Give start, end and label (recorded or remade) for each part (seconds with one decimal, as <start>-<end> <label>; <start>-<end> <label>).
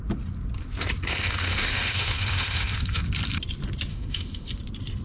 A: 0.0-1.1 recorded; 1.1-3.0 remade; 3.0-3.9 recorded; 3.9-4.5 remade; 4.5-5.0 recorded